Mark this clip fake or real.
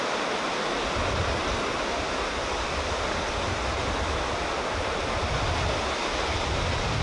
real